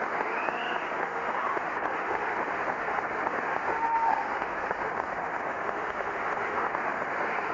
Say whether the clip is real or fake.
fake